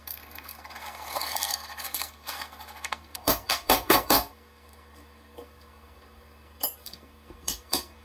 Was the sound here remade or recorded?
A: remade